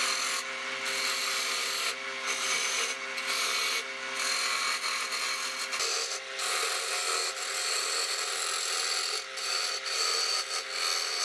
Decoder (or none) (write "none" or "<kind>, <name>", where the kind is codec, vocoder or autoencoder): none